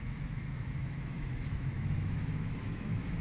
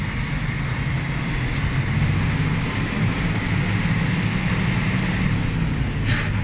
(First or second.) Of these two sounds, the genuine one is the second